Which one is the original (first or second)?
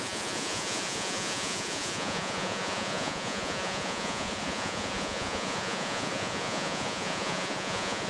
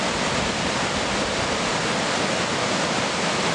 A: second